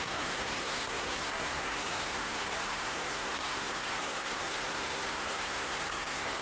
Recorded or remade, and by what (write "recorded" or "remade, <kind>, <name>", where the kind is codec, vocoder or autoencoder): remade, codec, SNAC